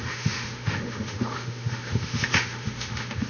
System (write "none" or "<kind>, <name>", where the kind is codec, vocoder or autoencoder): autoencoder, DAC-VAE